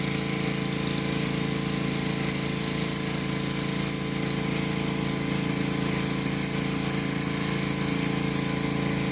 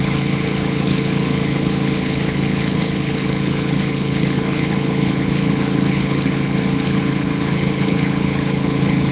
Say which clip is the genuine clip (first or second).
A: first